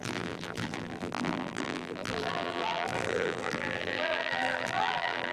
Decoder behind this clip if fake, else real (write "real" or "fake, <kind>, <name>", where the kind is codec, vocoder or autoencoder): fake, vocoder, BigVGAN v2